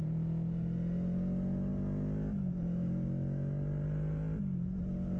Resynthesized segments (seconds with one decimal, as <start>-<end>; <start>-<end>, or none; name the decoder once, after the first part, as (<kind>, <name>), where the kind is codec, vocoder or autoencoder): none